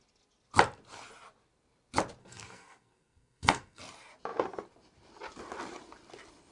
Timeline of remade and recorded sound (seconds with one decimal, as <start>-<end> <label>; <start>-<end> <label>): 0.0-2.2 recorded; 2.2-3.8 remade; 3.8-6.5 recorded